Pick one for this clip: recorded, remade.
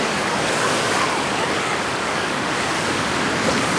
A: remade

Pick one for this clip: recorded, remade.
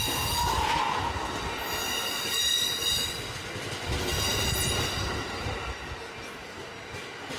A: recorded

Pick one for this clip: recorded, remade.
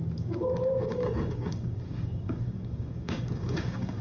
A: remade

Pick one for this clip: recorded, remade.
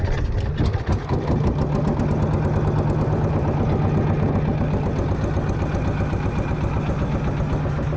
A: recorded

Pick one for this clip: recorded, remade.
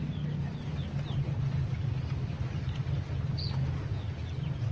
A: recorded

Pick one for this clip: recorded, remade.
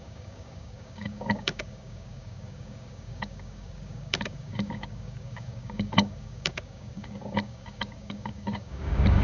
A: remade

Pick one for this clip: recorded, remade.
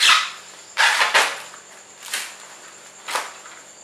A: recorded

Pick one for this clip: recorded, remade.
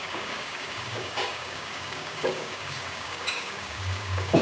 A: remade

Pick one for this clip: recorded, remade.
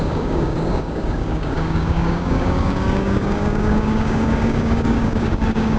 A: remade